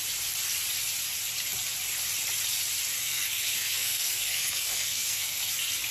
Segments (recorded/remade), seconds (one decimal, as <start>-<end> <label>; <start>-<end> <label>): 0.0-3.0 recorded; 3.0-5.5 remade; 5.5-5.9 recorded